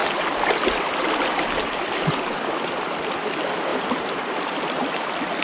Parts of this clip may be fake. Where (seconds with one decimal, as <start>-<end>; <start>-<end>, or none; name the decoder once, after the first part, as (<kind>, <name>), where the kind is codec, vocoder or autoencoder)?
none